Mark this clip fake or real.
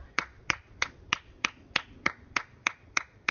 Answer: fake